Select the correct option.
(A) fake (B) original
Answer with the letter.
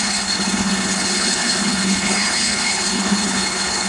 A